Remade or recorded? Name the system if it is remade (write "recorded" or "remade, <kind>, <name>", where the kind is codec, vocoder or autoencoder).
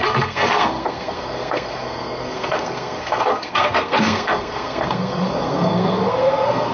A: remade, codec, SNAC